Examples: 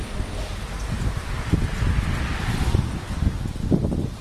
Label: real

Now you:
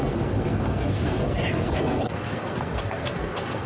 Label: fake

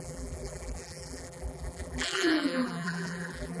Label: fake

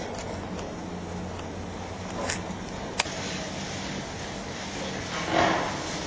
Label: real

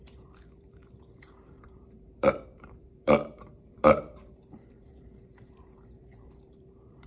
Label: fake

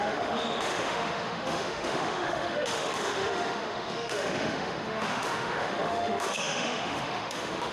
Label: fake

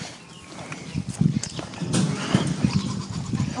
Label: real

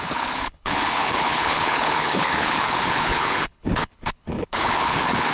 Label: fake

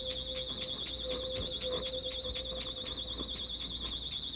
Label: real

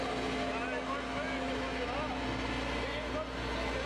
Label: real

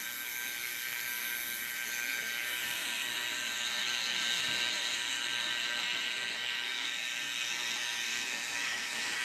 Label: fake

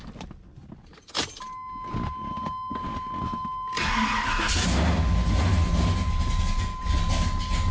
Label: real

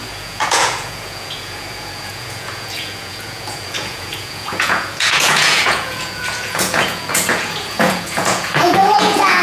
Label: fake